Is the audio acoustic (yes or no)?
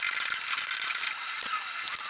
yes